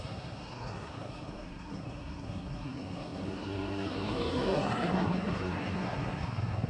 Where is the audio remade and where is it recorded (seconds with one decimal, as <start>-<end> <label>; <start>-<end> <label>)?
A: 0.0-6.7 remade